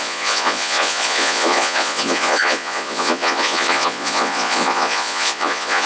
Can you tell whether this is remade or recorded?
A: remade